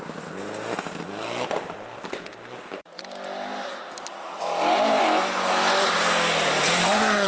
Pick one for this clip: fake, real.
real